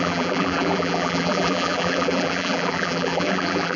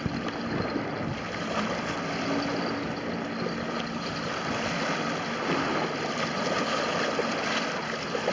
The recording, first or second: second